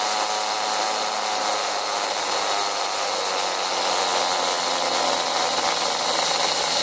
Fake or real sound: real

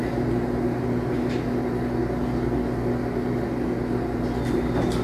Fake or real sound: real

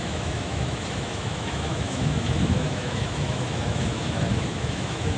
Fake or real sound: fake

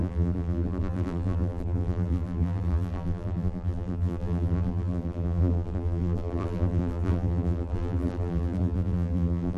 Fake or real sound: fake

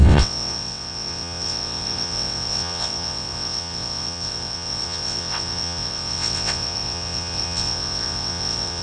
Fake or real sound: fake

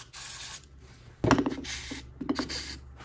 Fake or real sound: real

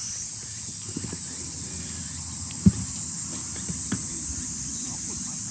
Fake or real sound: real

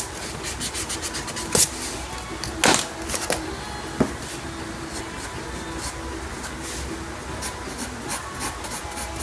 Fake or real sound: real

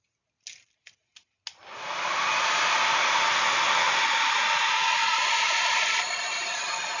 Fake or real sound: real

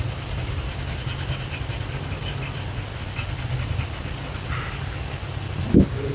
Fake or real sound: real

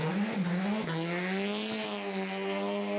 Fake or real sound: real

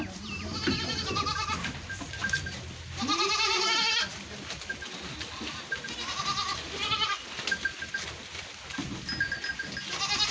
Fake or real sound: real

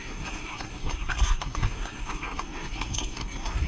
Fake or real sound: fake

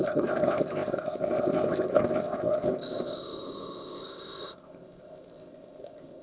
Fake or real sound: fake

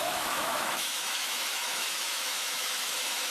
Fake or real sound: fake